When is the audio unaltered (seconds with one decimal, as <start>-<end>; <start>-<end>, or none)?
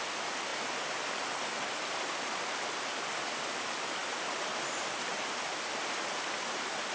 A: 0.0-6.9